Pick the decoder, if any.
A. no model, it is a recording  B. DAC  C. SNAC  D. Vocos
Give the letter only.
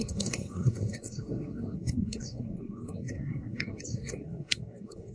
C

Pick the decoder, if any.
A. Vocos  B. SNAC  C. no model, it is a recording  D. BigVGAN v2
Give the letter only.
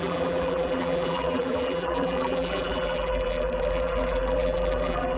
D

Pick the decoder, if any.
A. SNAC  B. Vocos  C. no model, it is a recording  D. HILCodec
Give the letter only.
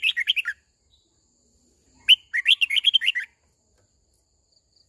C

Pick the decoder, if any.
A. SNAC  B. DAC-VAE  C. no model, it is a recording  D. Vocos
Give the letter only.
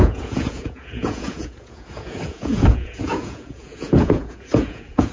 D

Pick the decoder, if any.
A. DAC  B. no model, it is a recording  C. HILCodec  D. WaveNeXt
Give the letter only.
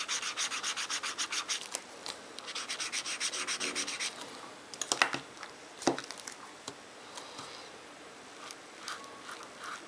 B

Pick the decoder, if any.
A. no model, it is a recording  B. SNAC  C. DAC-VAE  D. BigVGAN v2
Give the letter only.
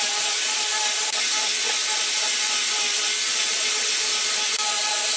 A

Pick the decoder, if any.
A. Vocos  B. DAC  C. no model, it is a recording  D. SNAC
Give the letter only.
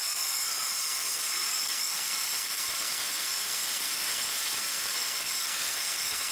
D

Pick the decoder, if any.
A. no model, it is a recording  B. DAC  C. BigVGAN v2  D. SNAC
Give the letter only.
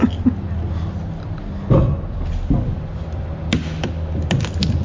A